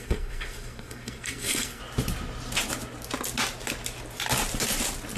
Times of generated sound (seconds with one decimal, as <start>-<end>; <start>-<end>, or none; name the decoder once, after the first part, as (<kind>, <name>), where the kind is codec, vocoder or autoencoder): 0.0-1.8 (codec, SNAC)